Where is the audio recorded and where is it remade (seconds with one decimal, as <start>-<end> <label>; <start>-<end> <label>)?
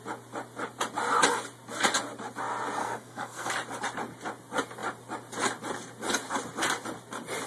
0.0-2.8 recorded; 2.8-3.5 remade; 3.5-7.5 recorded